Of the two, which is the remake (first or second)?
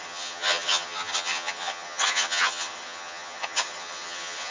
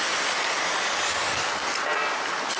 first